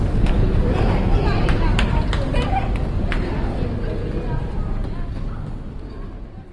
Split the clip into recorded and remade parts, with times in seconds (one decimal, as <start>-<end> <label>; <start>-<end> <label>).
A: 0.0-4.8 recorded; 4.8-5.9 remade; 5.9-6.5 recorded